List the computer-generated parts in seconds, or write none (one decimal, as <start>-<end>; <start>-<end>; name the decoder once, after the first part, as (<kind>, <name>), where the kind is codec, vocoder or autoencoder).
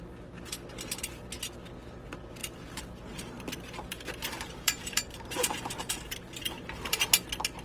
2.4-7.0 (vocoder, BigVGAN v2)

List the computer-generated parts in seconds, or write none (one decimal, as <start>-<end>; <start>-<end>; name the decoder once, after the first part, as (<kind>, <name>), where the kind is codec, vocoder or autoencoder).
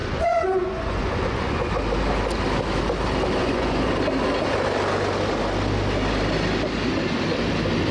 0.0-1.7 (vocoder, Vocos); 3.4-3.9